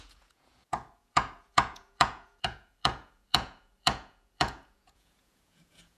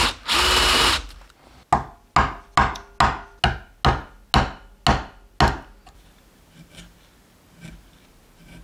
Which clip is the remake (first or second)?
first